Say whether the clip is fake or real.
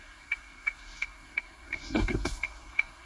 fake